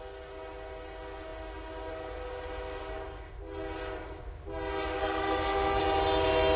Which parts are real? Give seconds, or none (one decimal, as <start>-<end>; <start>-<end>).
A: 0.0-5.0; 5.8-6.6